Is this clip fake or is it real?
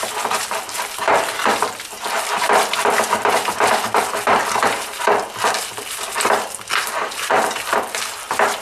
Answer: fake